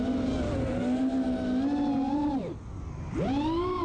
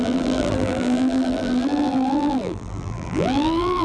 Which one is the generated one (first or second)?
second